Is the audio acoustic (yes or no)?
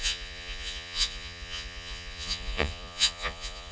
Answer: no